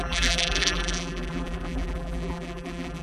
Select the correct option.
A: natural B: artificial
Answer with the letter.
B